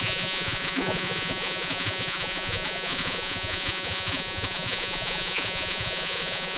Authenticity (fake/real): fake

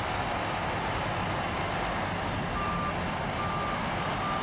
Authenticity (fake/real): real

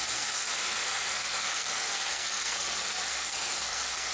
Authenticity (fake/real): fake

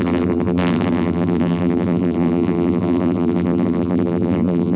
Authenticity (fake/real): fake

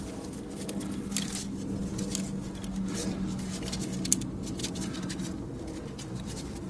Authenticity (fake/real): real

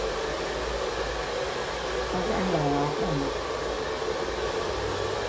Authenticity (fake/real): real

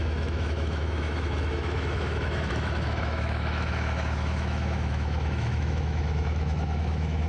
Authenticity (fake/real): fake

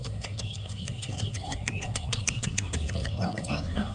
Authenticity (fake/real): fake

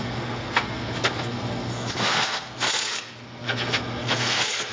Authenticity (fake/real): fake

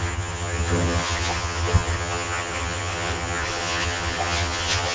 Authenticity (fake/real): fake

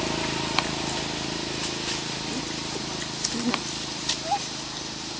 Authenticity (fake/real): real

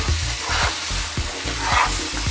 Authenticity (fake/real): real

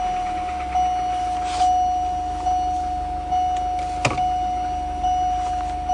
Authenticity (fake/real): real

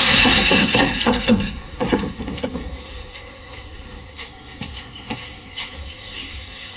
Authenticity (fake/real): fake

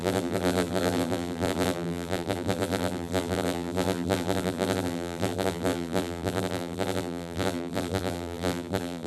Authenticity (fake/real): fake